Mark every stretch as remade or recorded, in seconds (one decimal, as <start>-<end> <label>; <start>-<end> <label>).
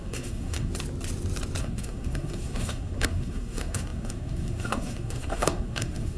0.0-0.7 remade; 0.7-1.6 recorded; 1.6-6.2 remade